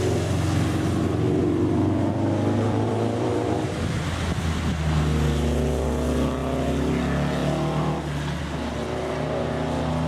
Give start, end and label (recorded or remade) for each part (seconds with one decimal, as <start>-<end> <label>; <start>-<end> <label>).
0.0-1.4 recorded; 1.4-4.0 remade; 4.0-10.1 recorded